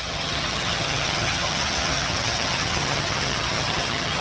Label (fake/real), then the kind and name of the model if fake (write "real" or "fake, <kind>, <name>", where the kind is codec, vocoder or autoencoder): fake, vocoder, HiFi-GAN